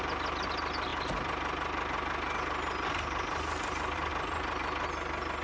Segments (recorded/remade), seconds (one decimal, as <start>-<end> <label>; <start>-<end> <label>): 0.0-5.4 recorded